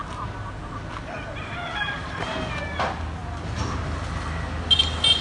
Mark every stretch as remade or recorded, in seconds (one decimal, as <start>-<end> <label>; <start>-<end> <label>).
0.0-5.2 recorded